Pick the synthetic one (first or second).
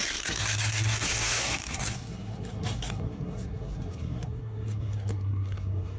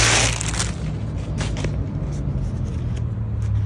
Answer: first